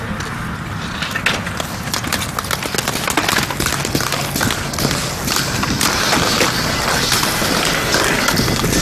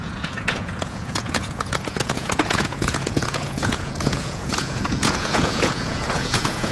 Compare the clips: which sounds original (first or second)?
first